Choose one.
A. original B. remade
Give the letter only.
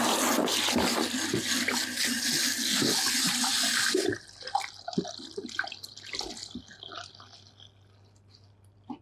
A